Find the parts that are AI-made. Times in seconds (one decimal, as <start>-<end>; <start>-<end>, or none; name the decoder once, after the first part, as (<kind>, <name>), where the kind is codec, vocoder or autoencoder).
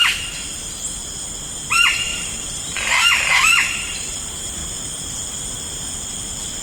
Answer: 1.7-4.6 (vocoder, BigVGAN v2); 6.1-6.6